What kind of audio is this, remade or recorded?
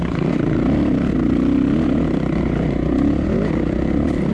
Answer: recorded